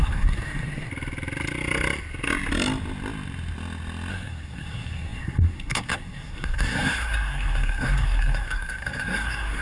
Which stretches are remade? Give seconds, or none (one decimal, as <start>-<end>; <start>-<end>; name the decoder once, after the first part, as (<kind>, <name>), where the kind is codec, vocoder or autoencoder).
0.0-0.9 (codec, SNAC); 4.1-9.6